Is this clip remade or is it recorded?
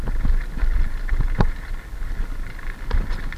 recorded